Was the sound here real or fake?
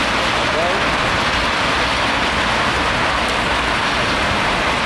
real